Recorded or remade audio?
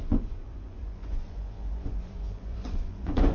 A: remade